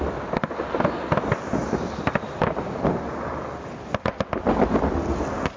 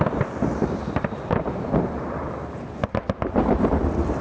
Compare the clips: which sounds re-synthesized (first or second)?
second